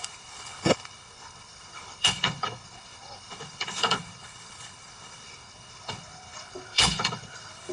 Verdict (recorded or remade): remade